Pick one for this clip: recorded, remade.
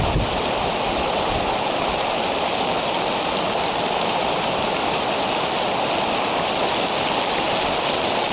recorded